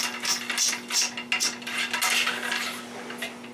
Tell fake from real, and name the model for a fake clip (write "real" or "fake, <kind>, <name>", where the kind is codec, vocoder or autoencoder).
real